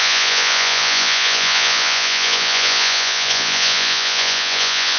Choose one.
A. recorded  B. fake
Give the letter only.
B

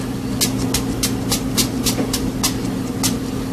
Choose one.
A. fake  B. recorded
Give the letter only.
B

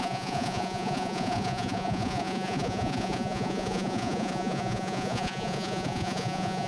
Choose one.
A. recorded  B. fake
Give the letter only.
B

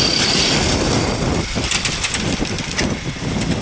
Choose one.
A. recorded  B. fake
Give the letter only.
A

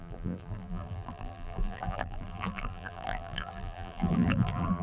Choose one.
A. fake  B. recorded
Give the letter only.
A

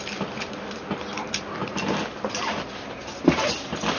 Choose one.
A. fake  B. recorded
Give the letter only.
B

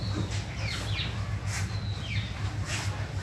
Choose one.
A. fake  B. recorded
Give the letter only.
B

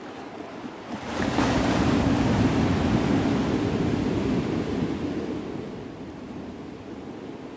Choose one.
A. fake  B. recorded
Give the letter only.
B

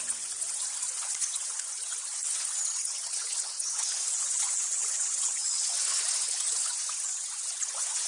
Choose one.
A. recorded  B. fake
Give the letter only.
B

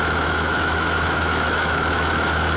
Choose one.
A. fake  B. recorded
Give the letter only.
A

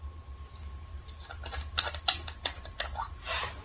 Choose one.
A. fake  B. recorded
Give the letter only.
B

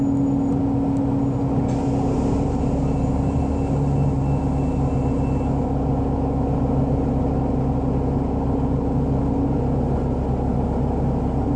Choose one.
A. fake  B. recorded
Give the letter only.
B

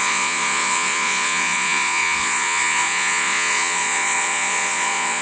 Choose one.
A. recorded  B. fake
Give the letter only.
B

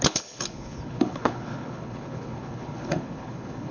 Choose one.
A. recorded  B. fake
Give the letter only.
B